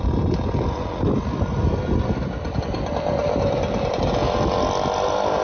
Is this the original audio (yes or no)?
yes